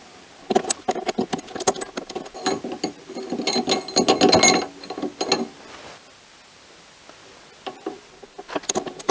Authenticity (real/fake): real